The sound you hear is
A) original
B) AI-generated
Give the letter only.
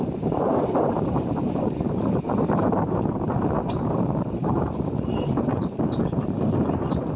B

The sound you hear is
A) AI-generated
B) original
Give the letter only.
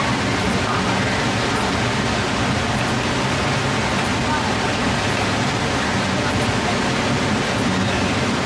B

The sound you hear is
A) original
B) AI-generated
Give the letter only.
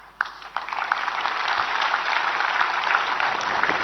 B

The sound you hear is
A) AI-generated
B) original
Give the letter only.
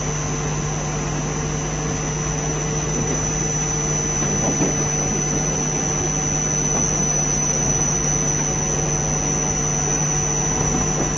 B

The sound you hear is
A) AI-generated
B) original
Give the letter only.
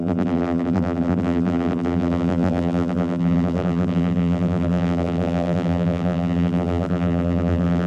A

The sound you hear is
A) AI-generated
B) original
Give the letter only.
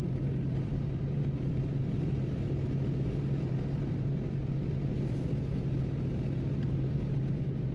B